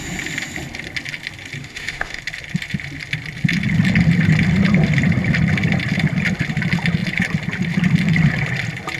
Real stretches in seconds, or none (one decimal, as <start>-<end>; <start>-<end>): 0.0-1.6; 2.2-9.0